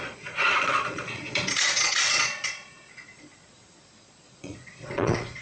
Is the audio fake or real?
fake